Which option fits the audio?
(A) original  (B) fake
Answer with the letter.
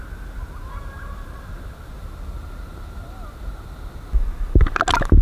A